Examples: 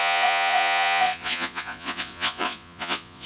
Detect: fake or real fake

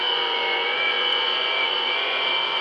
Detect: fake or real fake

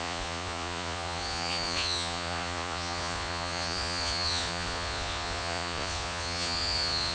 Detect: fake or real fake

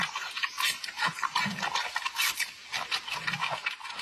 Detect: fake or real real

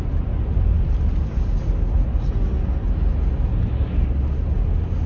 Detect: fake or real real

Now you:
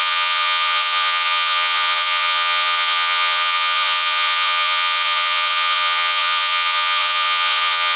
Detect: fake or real fake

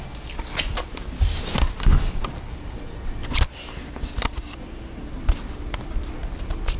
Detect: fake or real real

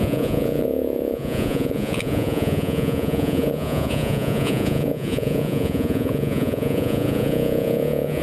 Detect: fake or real fake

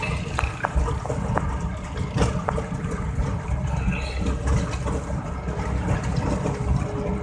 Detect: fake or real real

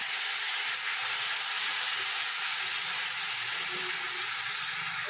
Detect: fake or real real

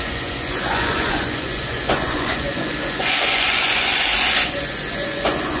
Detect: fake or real fake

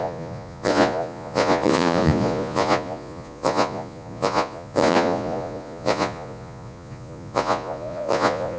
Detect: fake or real fake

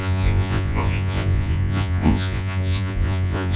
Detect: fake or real fake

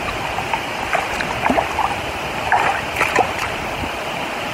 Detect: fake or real real